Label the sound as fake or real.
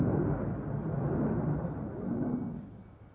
real